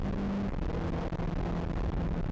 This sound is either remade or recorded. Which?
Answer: recorded